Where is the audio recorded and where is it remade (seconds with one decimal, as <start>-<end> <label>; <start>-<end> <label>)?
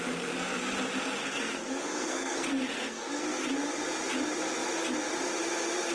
0.0-1.2 recorded; 1.2-3.5 remade; 3.5-5.9 recorded